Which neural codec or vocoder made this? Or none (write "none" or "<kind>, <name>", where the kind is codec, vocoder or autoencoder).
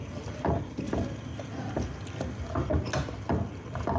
none